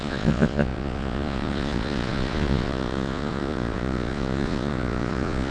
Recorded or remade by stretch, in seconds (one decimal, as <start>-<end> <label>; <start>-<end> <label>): 0.0-5.5 remade